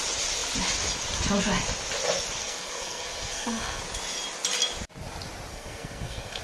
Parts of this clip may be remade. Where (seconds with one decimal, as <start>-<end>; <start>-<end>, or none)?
2.4-3.8; 5.5-6.4